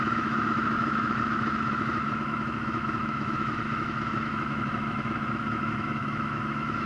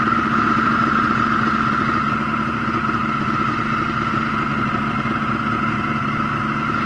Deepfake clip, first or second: first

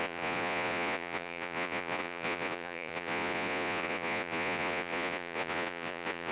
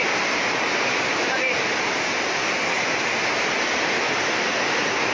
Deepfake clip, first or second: first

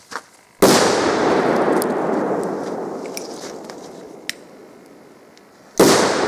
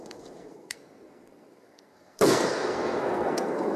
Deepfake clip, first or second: second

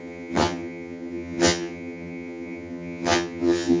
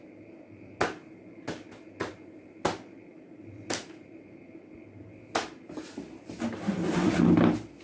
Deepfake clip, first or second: first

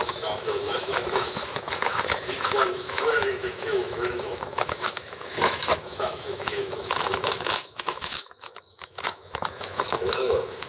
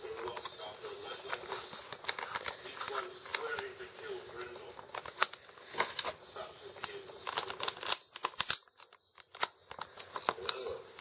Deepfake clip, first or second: first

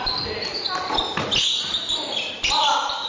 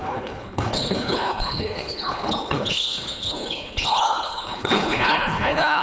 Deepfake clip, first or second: second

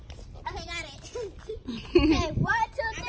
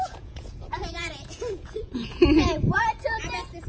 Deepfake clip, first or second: second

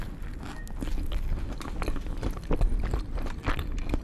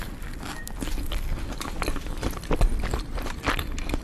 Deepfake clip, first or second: second